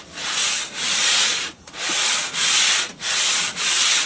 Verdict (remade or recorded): remade